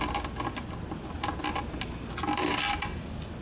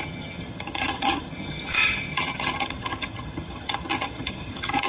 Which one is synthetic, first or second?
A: second